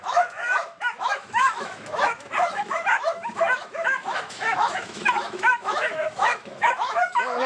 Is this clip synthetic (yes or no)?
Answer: yes